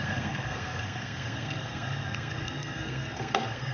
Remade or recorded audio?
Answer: remade